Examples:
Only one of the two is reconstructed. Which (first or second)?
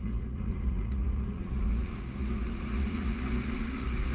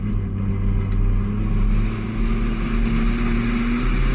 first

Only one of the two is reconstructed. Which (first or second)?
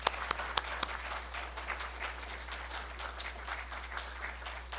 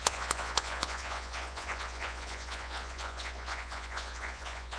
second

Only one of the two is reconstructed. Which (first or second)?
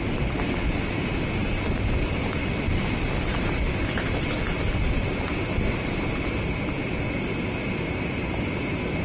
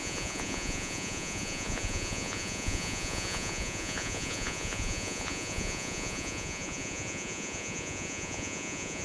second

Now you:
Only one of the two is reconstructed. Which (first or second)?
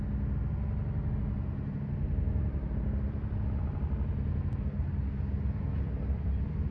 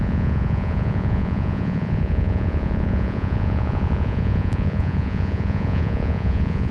second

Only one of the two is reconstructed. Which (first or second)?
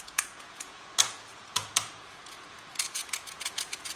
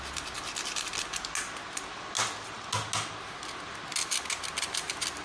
first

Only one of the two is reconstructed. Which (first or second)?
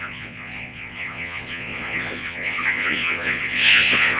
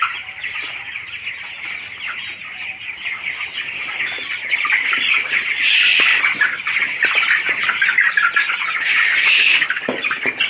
first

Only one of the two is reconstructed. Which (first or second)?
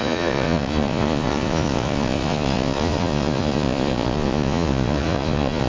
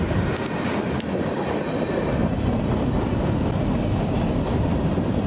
first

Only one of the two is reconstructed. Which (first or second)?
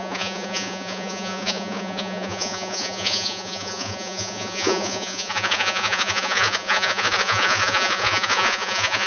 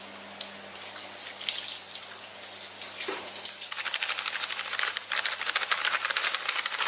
first